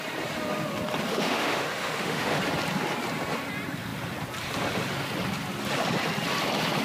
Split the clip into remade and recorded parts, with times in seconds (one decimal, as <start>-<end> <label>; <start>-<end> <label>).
0.0-1.1 recorded; 1.1-2.4 remade; 2.4-6.8 recorded

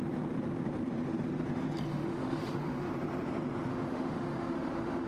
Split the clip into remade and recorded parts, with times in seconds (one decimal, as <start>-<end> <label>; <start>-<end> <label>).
0.0-1.9 recorded; 1.9-2.9 remade; 2.9-3.7 recorded; 3.7-5.1 remade

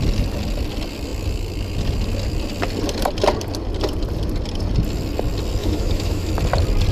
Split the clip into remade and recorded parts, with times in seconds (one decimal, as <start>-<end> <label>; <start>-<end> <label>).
0.0-5.6 recorded; 5.6-6.3 remade; 6.3-6.9 recorded